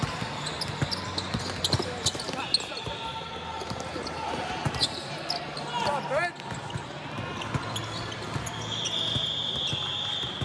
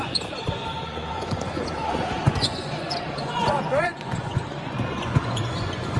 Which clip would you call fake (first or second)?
second